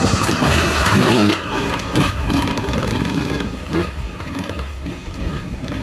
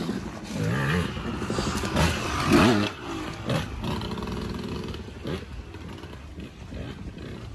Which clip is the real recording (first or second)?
second